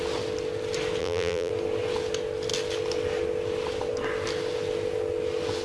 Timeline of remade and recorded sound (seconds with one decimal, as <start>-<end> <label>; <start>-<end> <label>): 0.0-1.0 recorded; 1.0-1.5 remade; 1.5-5.6 recorded